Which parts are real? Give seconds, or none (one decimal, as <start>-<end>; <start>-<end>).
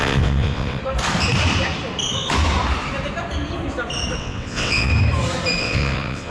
0.8-4.2; 4.9-5.6